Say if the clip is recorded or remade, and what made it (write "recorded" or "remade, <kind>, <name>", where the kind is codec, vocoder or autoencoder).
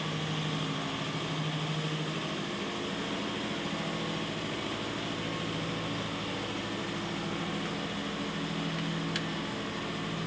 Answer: recorded